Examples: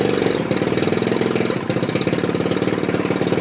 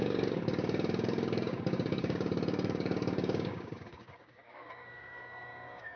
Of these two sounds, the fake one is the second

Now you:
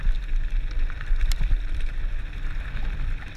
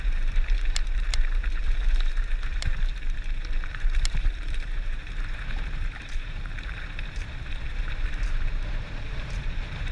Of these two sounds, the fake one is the second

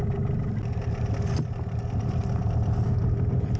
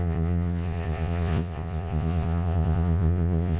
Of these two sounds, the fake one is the second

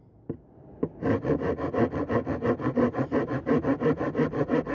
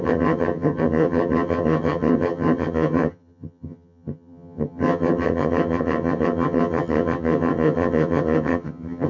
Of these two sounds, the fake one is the second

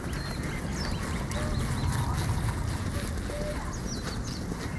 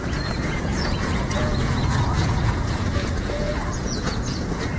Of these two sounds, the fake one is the second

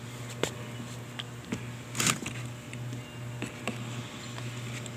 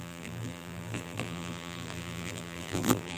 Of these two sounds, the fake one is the second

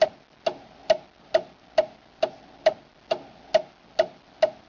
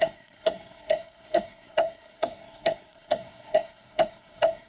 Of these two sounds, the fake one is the second